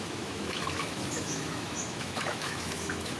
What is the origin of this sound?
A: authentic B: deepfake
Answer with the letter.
B